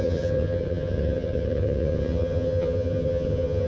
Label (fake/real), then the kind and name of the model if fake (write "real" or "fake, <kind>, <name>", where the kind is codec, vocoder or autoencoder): fake, vocoder, HiFi-GAN